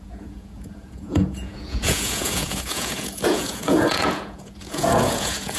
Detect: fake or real fake